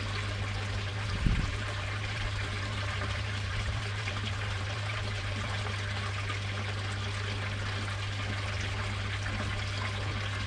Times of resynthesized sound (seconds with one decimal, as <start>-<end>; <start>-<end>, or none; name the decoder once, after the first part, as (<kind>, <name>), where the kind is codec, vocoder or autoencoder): 0.9-5.6 (vocoder, BigVGAN v2)